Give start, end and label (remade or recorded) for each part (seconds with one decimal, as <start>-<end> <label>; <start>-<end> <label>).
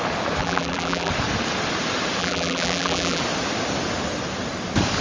0.0-0.4 recorded; 0.4-1.1 remade; 1.1-2.2 recorded; 2.2-3.2 remade; 3.2-5.0 recorded